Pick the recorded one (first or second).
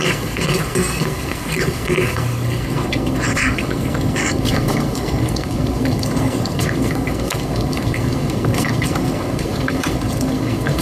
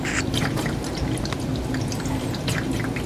second